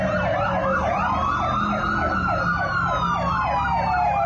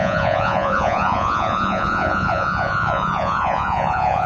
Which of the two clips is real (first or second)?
first